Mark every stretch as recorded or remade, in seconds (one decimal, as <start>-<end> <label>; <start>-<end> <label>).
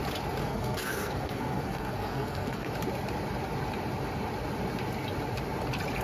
0.0-0.4 recorded; 0.4-2.7 remade; 2.7-6.0 recorded